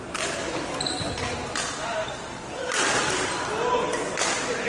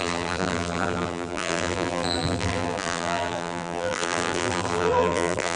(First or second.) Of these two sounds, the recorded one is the first